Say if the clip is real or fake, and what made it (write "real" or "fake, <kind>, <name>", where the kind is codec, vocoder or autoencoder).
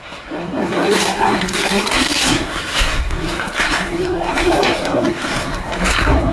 fake, codec, SNAC